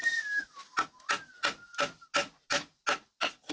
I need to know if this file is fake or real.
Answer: real